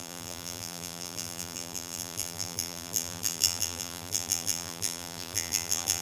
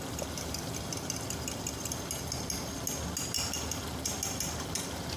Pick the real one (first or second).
second